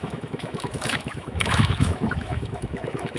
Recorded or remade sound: remade